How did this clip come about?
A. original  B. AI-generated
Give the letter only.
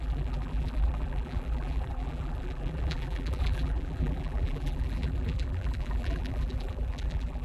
B